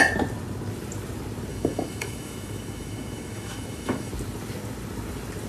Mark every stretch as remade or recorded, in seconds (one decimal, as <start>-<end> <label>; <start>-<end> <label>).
0.0-1.5 recorded; 1.5-4.1 remade; 4.1-5.5 recorded